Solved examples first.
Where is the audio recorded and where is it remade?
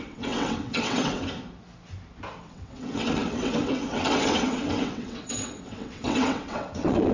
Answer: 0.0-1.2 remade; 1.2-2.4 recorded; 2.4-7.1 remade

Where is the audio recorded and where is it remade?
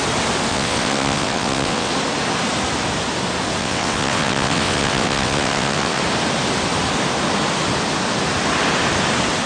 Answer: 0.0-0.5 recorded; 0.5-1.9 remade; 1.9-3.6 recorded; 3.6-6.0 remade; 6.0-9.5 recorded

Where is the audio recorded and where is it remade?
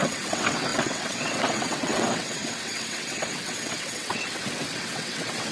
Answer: 0.0-5.5 remade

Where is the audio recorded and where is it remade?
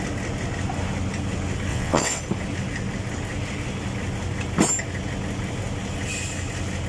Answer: 0.0-1.7 recorded; 1.7-2.2 remade; 2.2-6.9 recorded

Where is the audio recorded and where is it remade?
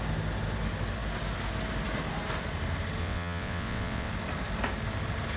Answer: 0.0-3.0 recorded; 3.0-4.1 remade; 4.1-5.4 recorded